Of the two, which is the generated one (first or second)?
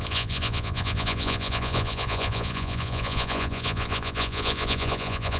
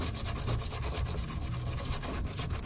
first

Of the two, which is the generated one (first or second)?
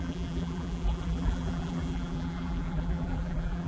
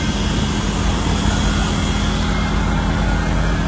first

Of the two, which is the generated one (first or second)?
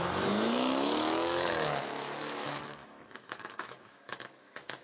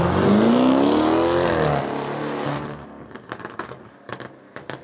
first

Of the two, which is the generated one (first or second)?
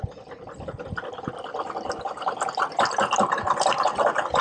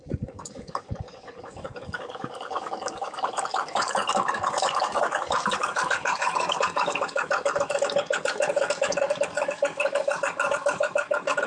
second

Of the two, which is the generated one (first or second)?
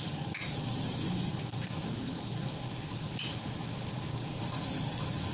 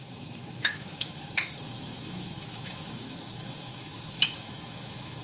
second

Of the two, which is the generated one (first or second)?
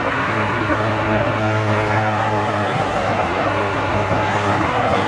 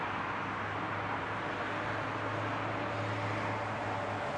first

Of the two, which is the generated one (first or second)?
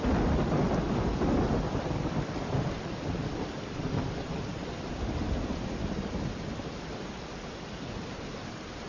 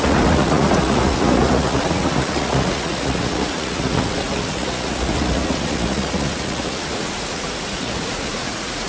second